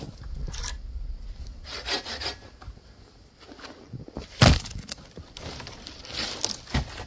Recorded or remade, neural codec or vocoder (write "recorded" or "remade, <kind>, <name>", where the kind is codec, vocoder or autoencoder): recorded